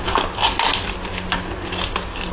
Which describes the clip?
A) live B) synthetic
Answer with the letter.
A